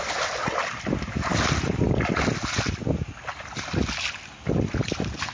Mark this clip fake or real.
real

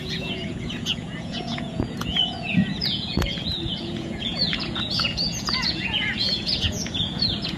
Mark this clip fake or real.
fake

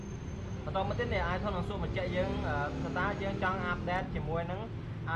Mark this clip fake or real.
real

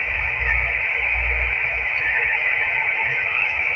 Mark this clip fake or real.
fake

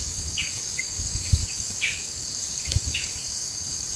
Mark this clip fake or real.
fake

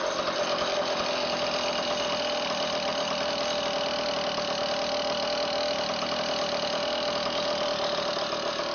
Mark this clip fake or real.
real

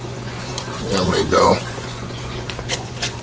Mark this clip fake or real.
fake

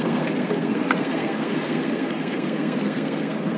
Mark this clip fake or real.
fake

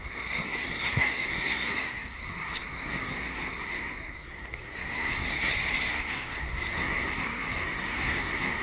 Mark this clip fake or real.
fake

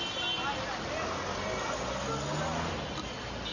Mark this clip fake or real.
real